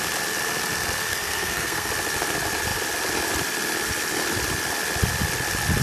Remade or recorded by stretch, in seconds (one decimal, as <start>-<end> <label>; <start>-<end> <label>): 0.0-1.1 recorded; 1.1-1.9 remade; 1.9-5.8 recorded